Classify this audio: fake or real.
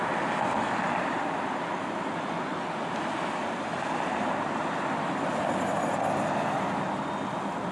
real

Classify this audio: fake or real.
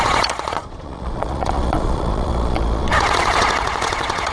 fake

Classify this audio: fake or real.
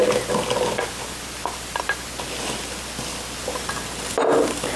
real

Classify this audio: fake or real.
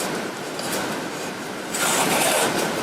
fake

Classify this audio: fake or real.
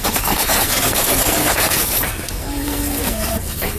fake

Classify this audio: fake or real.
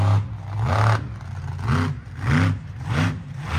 real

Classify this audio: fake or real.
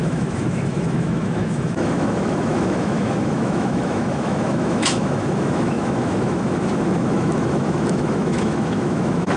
fake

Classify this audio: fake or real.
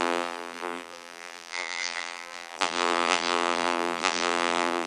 fake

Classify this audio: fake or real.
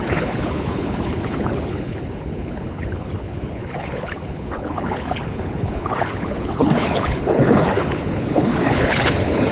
fake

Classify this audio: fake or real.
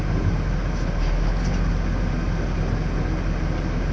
real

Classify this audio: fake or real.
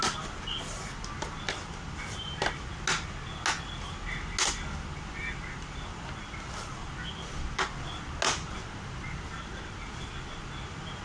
real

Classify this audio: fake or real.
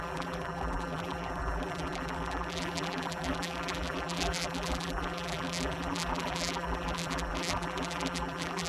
fake